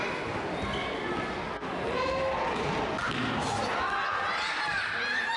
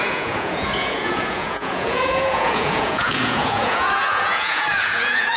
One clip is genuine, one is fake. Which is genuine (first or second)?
first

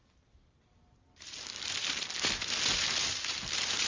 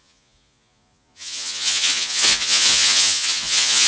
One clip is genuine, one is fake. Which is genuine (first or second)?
first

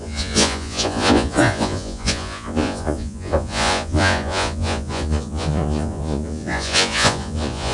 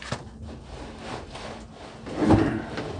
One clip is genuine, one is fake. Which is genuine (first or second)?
second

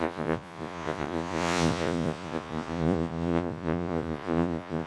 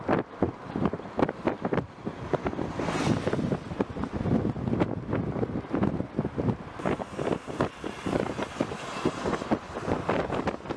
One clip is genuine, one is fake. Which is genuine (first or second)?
second